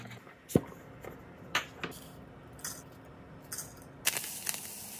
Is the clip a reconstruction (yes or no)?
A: no